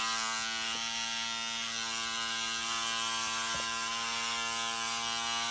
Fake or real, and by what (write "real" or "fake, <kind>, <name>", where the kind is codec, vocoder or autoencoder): real